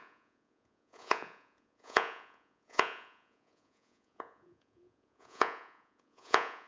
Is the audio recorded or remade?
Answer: remade